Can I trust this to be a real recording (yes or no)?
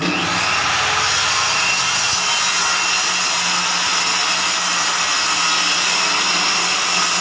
yes